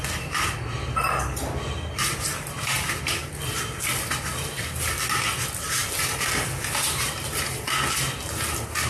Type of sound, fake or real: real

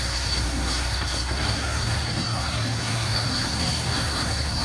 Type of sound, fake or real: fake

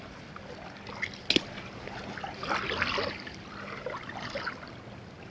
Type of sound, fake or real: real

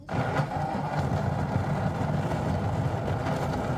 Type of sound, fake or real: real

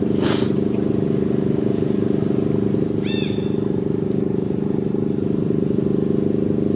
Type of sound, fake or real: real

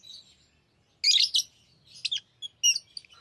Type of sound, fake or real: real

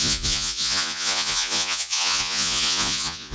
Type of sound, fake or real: fake